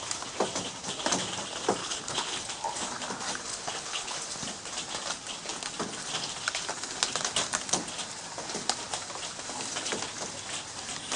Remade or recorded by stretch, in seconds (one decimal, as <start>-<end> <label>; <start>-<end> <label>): 0.0-1.8 recorded; 1.8-2.4 remade; 2.4-3.5 recorded; 3.5-4.2 remade; 4.2-11.2 recorded